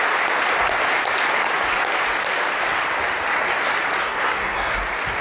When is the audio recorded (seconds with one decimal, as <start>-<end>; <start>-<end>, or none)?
0.0-4.0; 4.8-5.2